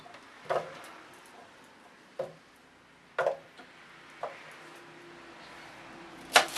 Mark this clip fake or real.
real